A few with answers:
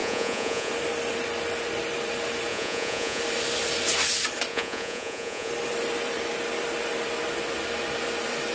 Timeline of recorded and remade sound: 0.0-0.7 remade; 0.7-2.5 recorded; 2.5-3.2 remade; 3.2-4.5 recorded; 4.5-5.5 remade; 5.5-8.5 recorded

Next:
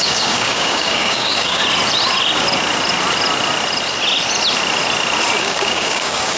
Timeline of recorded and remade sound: 0.0-1.6 remade; 1.6-5.4 recorded; 5.4-6.4 remade

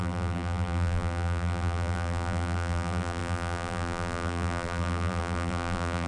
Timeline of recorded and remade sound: 0.0-6.1 remade

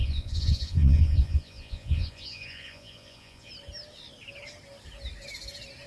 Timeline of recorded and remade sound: 0.0-3.5 remade; 3.5-5.9 recorded

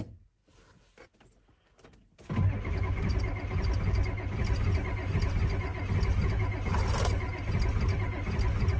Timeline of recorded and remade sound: 0.0-8.8 recorded

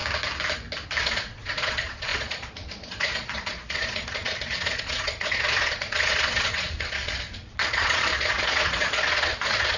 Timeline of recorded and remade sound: 0.0-1.0 recorded; 1.0-9.8 remade

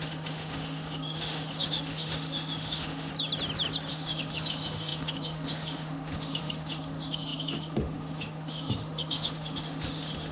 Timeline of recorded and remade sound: 0.0-3.1 remade; 3.1-3.9 recorded; 3.9-10.3 remade

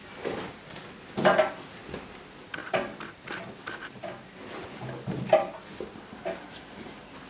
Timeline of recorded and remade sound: 0.0-7.3 recorded